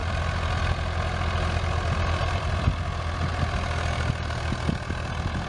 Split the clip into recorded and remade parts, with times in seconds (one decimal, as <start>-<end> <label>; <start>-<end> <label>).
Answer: 0.0-5.5 recorded